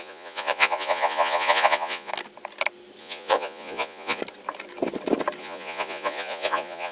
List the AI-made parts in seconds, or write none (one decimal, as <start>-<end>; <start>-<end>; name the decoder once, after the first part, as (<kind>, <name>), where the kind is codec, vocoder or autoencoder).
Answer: 0.0-2.1 (vocoder, Vocos); 3.0-4.2; 5.4-6.9